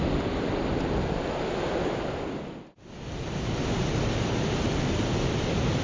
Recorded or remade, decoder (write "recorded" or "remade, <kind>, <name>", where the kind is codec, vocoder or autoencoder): recorded